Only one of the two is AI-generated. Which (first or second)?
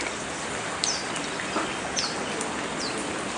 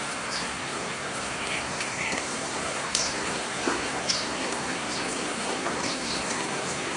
second